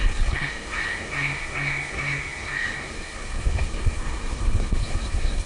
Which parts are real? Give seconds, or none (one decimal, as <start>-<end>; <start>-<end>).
none